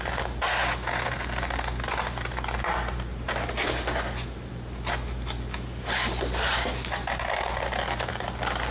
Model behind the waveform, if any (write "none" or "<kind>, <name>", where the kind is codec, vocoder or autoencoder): none